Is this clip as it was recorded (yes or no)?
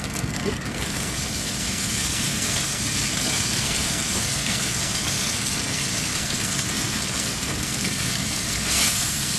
no